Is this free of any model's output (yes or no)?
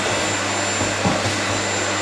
yes